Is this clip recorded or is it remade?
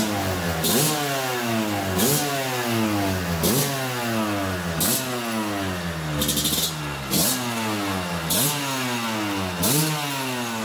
recorded